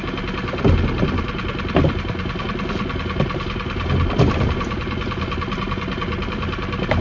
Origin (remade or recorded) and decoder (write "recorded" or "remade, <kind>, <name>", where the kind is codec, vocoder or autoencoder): recorded